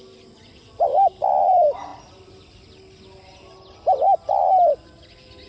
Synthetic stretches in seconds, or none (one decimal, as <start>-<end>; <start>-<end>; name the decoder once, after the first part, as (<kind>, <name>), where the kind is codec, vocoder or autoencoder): none